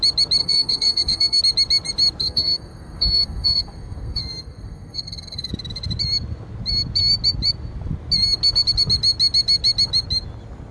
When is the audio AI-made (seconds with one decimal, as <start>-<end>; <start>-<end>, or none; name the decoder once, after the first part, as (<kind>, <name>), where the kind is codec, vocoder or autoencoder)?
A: 0.4-1.4 (codec, SNAC); 2.2-5.5